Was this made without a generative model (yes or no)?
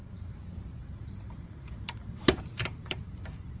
no